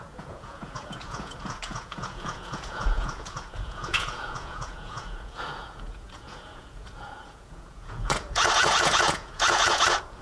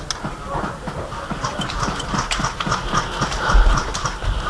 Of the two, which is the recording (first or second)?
second